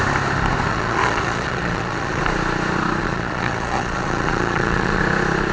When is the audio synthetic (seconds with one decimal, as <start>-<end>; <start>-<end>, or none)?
0.7-2.2; 3.0-5.0